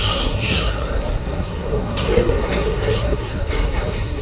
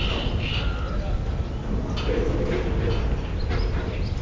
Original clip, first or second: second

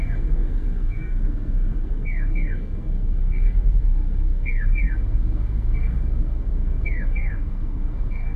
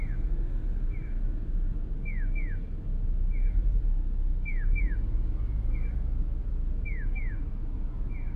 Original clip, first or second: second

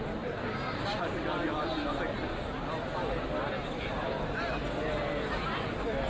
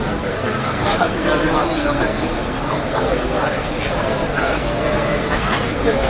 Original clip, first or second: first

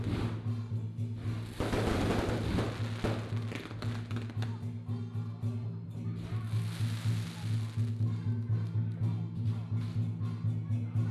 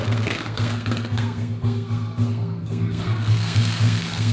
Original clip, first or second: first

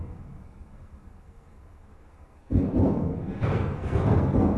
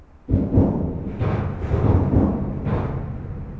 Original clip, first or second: second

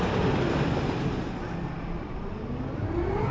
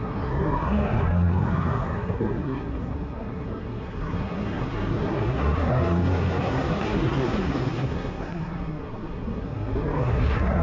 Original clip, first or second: first